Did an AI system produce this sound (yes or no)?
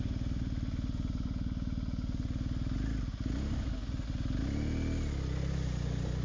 no